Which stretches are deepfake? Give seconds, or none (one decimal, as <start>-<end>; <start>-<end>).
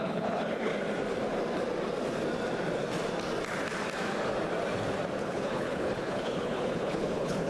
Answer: 0.0-0.7; 5.2-7.5